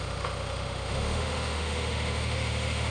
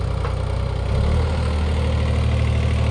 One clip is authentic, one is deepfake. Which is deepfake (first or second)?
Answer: first